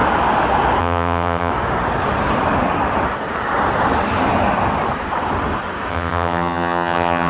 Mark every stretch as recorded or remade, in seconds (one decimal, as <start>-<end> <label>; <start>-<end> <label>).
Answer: 0.0-0.8 recorded; 0.8-1.5 remade; 1.5-5.9 recorded; 5.9-7.3 remade